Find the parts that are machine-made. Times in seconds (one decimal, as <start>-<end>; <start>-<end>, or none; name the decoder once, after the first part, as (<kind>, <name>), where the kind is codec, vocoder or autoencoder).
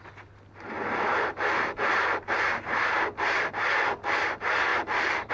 1.1-3.7 (vocoder, BigVGAN v2); 4.7-5.3